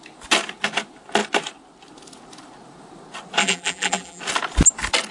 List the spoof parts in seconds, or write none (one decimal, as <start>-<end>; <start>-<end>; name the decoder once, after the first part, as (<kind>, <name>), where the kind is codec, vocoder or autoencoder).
3.4-4.2 (vocoder, BigVGAN v2)